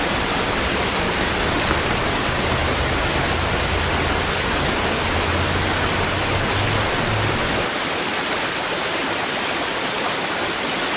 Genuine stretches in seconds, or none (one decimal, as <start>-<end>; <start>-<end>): 0.0-11.0